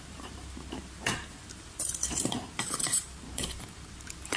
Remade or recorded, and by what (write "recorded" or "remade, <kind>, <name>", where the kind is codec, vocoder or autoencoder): remade, vocoder, BigVGAN v2